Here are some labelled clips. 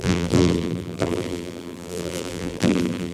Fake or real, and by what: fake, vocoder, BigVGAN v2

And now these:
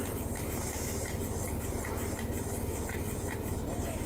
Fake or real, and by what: real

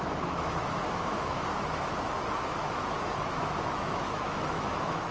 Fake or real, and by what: fake, autoencoder, DAC-VAE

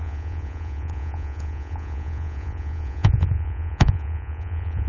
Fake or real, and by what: fake, vocoder, Vocos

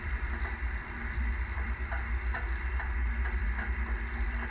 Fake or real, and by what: fake, vocoder, BigVGAN v2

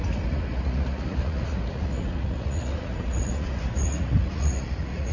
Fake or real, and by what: fake, vocoder, Vocos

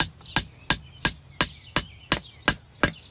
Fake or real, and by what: real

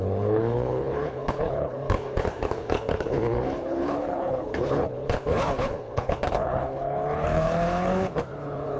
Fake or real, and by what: fake, codec, HILCodec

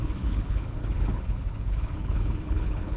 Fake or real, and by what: fake, codec, HILCodec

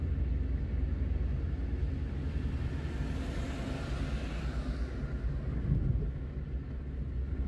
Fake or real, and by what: real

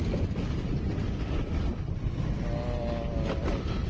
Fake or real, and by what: real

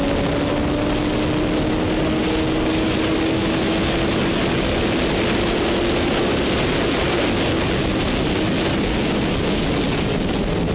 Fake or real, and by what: real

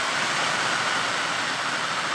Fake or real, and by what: real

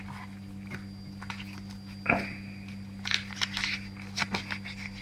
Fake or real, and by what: real